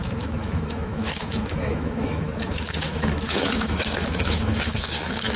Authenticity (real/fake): fake